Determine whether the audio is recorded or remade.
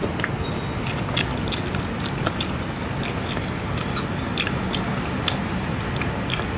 recorded